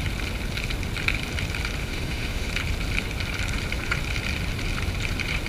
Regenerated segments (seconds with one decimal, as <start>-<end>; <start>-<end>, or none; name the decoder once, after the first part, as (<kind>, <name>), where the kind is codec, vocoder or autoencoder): 1.8-2.5 (autoencoder, DAC-VAE)